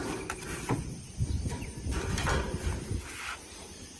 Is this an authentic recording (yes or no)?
yes